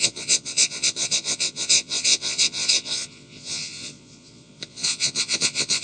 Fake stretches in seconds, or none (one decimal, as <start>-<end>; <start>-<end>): 0.0-5.8